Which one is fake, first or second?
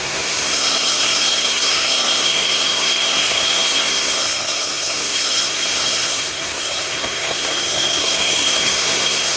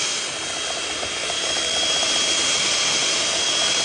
first